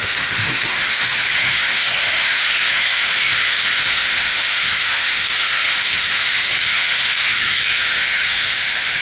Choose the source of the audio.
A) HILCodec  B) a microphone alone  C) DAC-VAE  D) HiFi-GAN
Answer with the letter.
C